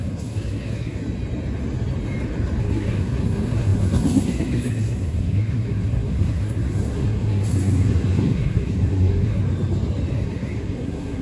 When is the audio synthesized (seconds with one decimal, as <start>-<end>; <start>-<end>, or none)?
0.0-1.0; 2.6-9.4; 10.1-11.2